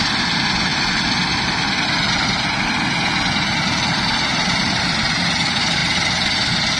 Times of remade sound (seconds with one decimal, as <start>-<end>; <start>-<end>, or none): none